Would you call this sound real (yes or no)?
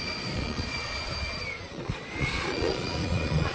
no